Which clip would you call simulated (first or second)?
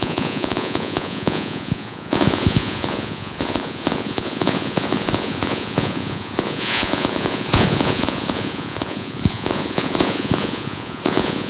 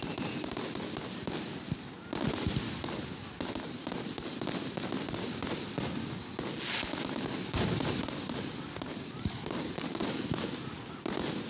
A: first